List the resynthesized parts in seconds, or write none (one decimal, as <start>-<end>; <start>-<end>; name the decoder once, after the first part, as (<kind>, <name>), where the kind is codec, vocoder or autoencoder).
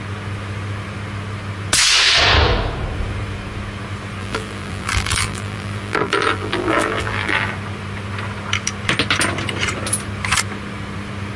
4.2-7.5 (vocoder, BigVGAN v2)